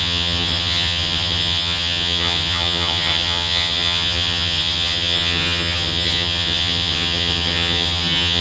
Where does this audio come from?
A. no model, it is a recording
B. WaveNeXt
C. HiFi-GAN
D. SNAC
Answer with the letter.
C